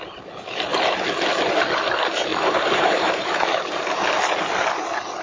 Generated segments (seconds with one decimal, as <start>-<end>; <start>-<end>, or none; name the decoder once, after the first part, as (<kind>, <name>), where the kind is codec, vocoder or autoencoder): 2.3-4.1 (vocoder, BigVGAN v2)